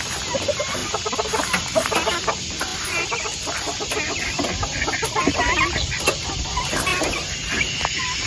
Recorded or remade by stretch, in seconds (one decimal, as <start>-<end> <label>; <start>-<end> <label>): 0.0-8.3 recorded